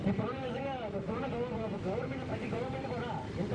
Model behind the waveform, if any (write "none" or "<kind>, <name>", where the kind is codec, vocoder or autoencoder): none